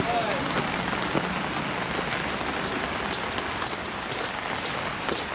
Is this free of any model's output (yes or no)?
yes